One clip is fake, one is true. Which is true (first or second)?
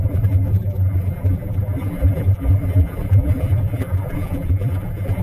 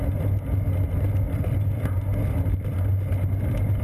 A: second